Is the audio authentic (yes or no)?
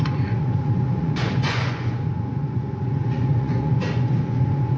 no